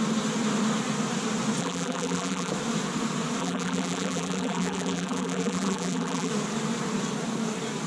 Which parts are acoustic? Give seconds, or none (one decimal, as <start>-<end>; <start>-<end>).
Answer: 0.0-1.6; 2.5-3.4; 6.3-7.9